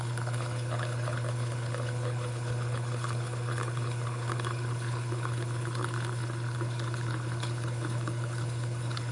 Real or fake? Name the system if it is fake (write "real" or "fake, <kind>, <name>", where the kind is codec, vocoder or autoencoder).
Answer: fake, codec, HILCodec